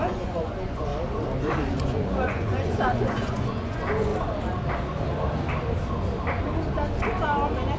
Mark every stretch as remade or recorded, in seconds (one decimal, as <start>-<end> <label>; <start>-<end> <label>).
0.0-0.9 remade; 0.9-1.7 recorded; 1.7-4.1 remade; 4.1-7.8 recorded